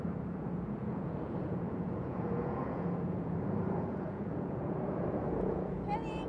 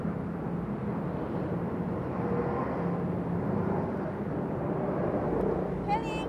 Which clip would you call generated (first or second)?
first